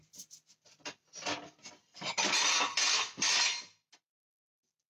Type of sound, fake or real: real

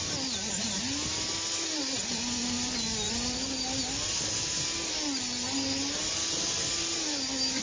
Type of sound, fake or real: real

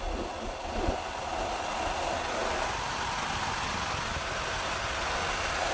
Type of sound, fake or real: real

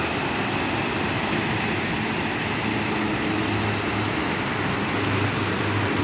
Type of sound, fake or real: fake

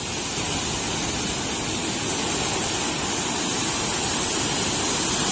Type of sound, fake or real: real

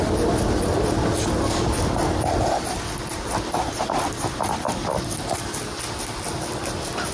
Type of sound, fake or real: fake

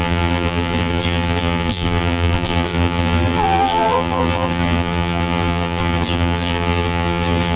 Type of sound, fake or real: fake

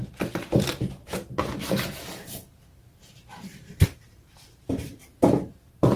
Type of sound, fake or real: fake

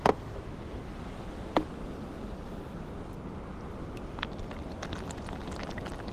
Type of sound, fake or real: real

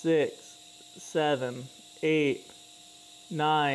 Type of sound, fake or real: real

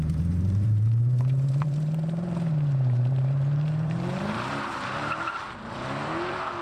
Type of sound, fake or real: fake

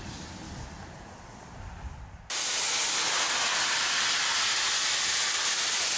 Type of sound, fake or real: fake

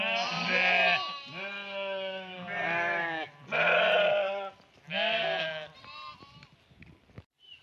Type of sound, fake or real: fake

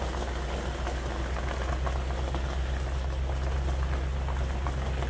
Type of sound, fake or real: real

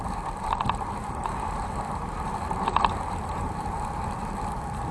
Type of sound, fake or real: fake